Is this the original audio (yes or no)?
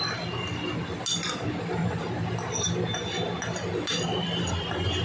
yes